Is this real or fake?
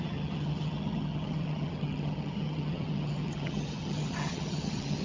fake